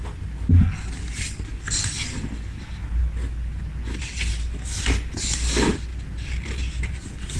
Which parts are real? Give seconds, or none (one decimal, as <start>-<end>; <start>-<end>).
0.0-7.4